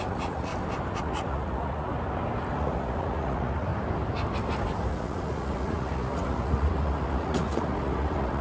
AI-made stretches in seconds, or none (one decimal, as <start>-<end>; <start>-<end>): 0.0-0.5; 1.0-1.9; 2.5-3.7; 4.9-8.4